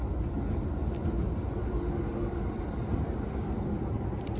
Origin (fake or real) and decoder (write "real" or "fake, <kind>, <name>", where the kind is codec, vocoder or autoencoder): real